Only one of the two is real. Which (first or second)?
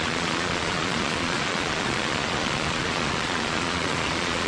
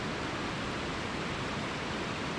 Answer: second